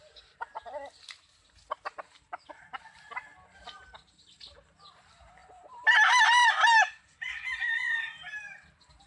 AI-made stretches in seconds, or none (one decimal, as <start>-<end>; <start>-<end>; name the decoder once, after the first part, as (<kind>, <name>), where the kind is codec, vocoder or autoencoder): none

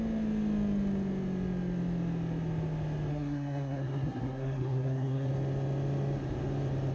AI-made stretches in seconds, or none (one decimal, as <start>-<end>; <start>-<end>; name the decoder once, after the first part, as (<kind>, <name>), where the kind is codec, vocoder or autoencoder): 3.1-5.3 (codec, SNAC)

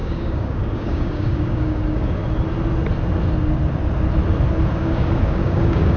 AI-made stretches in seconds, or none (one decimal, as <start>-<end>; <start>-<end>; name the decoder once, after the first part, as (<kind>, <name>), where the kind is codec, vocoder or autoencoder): 0.0-2.2 (codec, DAC); 4.7-6.0

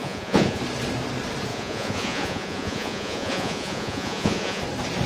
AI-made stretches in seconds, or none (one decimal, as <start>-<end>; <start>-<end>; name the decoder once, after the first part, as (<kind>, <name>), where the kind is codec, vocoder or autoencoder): 0.0-0.6 (vocoder, Vocos); 1.5-4.6